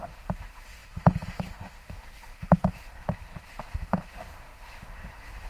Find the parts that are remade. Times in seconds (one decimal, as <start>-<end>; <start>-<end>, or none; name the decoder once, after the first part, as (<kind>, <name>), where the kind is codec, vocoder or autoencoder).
0.0-5.5 (autoencoder, DAC-VAE)